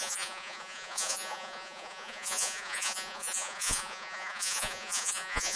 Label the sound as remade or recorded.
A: remade